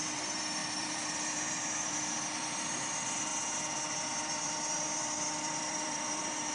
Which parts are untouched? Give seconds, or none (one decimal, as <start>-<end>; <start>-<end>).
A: 3.3-4.0